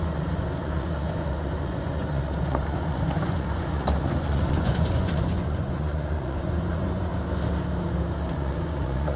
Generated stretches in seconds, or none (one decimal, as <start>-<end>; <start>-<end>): 0.0-7.1; 8.3-9.2